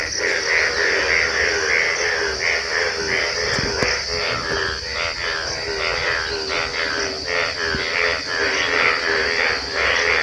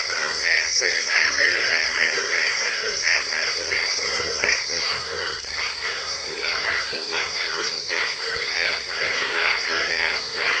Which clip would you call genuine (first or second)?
first